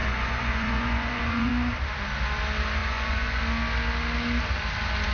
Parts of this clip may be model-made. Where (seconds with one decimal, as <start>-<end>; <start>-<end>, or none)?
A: 0.0-1.5; 2.8-3.4